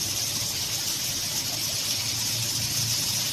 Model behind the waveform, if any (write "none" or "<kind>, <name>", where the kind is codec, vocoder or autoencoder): none